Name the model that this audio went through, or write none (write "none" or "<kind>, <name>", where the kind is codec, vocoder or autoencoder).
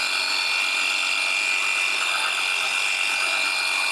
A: none